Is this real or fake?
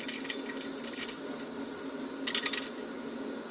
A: real